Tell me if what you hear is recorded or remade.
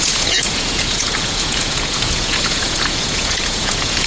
remade